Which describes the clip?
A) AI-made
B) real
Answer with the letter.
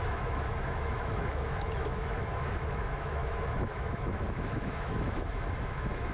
A